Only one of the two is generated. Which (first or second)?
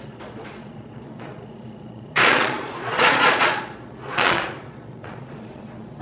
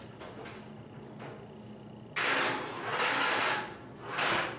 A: first